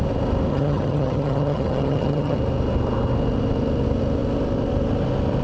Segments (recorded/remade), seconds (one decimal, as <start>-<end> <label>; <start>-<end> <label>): 0.0-0.5 recorded; 0.5-2.4 remade; 2.4-5.4 recorded

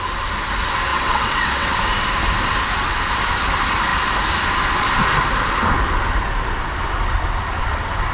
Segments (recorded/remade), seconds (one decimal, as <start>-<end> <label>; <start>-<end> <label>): 0.0-0.9 recorded; 0.9-1.7 remade; 1.7-8.1 recorded

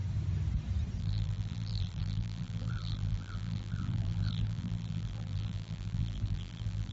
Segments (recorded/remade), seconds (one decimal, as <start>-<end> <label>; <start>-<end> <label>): 0.0-1.0 recorded; 1.0-6.9 remade